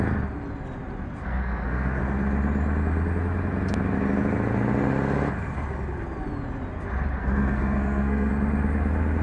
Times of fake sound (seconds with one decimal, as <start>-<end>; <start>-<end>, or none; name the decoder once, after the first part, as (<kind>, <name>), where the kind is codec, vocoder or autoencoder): 1.2-2.0 (codec, SNAC); 7.2-8.3